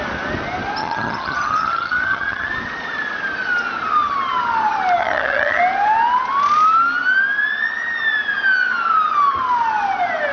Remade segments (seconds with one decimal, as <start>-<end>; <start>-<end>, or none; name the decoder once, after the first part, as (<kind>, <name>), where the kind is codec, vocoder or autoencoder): 0.8-2.5 (vocoder, HiFi-GAN); 5.0-5.6